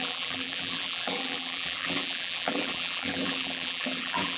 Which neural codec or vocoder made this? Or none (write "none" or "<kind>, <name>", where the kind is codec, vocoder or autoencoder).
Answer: vocoder, BigVGAN v2